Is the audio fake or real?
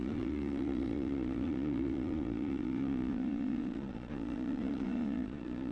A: fake